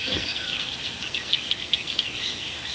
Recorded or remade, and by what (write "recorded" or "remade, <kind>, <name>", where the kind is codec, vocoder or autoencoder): remade, codec, SNAC